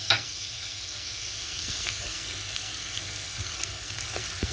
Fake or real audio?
fake